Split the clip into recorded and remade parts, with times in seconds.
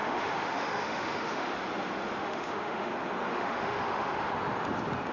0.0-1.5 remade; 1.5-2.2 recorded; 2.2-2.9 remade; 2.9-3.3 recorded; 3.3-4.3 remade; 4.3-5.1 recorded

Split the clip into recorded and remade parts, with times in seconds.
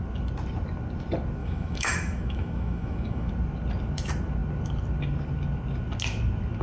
0.0-1.4 recorded; 1.4-3.3 remade; 3.3-6.6 recorded